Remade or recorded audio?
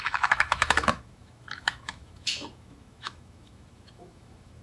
remade